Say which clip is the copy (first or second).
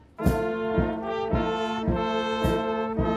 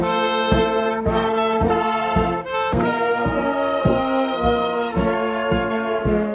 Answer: second